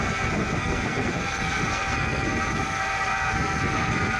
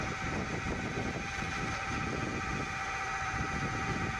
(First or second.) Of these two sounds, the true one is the second